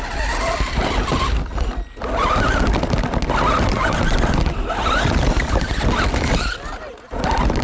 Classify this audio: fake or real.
real